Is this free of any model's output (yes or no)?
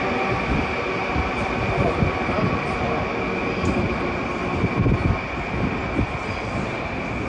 yes